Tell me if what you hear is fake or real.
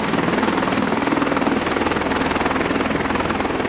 real